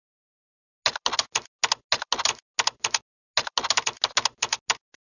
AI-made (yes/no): no